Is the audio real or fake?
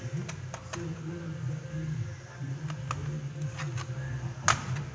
real